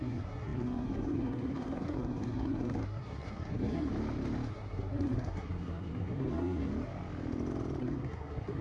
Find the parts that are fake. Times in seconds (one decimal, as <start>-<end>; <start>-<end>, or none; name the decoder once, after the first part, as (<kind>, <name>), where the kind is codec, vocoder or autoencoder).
0.0-3.9 (codec, SNAC); 4.5-6.7; 7.8-8.6